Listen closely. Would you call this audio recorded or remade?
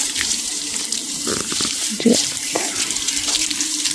remade